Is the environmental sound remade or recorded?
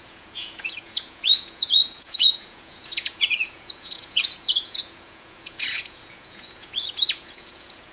remade